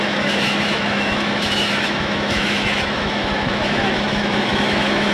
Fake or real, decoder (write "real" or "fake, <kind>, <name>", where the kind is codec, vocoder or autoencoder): fake, autoencoder, DAC-VAE